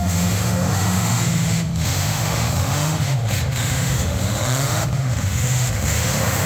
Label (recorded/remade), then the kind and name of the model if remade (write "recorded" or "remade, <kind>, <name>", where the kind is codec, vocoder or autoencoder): remade, autoencoder, DAC-VAE